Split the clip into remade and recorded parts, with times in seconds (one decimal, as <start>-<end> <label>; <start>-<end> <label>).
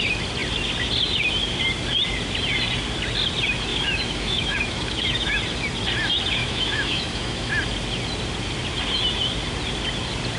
0.0-3.7 recorded; 3.7-5.4 remade; 5.4-6.4 recorded; 6.4-7.5 remade; 7.5-10.4 recorded